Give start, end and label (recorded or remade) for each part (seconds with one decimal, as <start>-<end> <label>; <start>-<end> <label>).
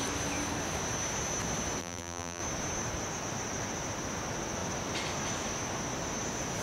0.0-1.8 recorded; 1.8-2.4 remade; 2.4-6.6 recorded